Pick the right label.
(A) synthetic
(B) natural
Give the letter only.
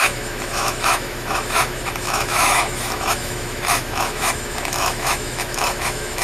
A